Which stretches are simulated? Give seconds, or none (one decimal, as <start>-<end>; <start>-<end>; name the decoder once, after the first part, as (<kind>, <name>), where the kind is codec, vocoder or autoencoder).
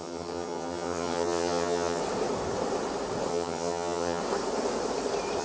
0.0-2.0 (vocoder, HiFi-GAN); 3.3-4.2